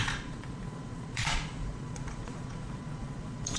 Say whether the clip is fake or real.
fake